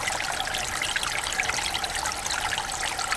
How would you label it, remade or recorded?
recorded